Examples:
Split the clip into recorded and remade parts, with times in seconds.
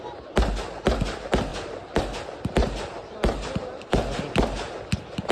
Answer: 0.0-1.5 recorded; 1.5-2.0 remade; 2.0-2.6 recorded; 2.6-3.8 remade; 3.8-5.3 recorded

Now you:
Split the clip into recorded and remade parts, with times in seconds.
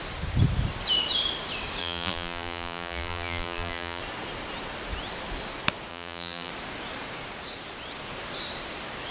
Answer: 0.0-1.8 recorded; 1.8-4.0 remade; 4.0-5.9 recorded; 5.9-6.5 remade; 6.5-9.1 recorded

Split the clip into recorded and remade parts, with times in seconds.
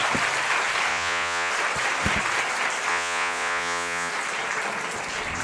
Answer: 0.0-0.9 recorded; 0.9-1.5 remade; 1.5-2.9 recorded; 2.9-4.1 remade; 4.1-5.4 recorded